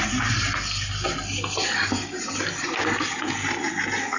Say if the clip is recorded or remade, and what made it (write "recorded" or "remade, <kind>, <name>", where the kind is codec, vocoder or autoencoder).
recorded